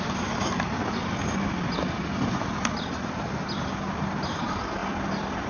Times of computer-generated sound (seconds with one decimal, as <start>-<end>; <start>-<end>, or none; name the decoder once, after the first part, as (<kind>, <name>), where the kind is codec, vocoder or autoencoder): none